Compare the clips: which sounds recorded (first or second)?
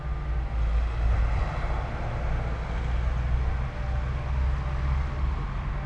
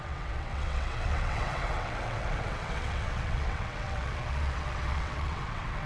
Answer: first